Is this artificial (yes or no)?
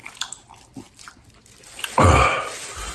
no